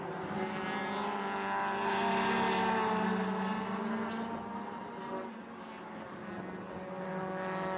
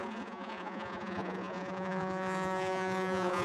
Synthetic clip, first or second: second